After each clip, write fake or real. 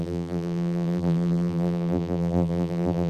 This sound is fake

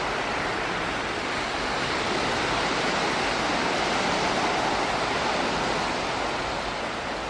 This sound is real